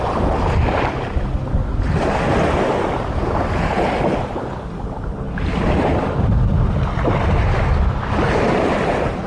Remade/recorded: recorded